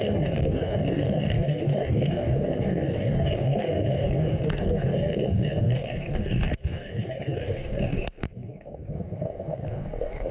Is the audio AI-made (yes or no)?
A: yes